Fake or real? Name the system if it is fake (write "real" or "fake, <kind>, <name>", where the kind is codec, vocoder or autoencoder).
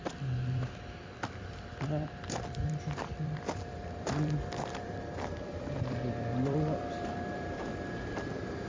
fake, vocoder, BigVGAN v2